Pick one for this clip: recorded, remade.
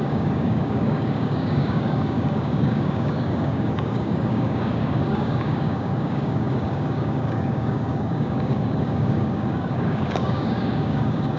remade